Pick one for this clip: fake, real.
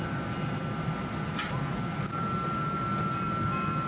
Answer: real